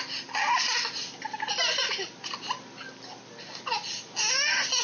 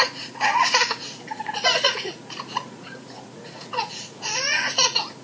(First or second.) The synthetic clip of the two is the second